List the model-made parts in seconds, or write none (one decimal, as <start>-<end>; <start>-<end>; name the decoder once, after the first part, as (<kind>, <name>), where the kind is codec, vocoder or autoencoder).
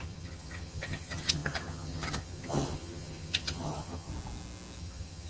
0.0-4.1 (vocoder, HiFi-GAN); 4.8-5.3